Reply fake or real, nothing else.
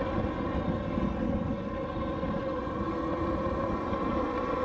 real